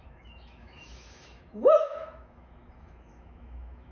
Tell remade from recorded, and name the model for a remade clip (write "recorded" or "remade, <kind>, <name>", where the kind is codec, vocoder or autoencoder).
remade, autoencoder, DAC-VAE